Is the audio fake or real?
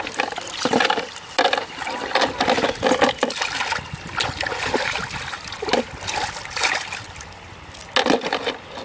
real